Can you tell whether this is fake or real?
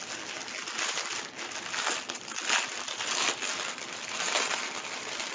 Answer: real